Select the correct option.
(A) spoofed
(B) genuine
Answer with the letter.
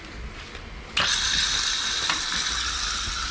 B